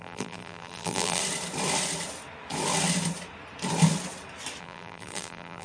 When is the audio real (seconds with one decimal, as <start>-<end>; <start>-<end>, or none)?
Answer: 1.2-4.6